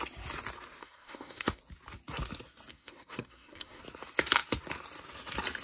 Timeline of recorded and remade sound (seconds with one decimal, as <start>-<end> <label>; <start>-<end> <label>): 0.0-0.8 recorded; 0.8-1.6 remade; 1.6-2.7 recorded; 2.7-3.8 remade; 3.8-5.6 recorded